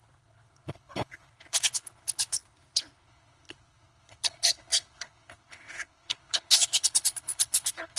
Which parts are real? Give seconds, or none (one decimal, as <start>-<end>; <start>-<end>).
none